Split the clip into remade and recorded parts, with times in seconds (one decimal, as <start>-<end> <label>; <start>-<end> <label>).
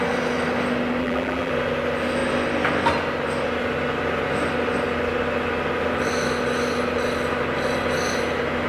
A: 0.0-1.0 recorded; 1.0-1.5 remade; 1.5-8.7 recorded